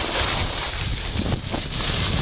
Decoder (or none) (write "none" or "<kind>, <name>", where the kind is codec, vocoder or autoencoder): none